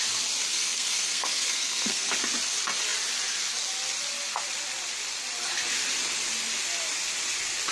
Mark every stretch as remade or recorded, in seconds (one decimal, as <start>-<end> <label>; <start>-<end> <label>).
0.0-0.5 recorded; 0.5-2.1 remade; 2.1-7.7 recorded

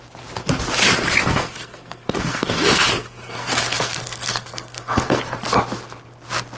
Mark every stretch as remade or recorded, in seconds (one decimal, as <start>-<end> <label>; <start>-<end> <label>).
0.0-1.2 recorded; 1.2-5.2 remade; 5.2-6.6 recorded